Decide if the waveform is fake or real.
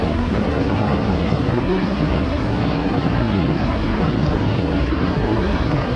fake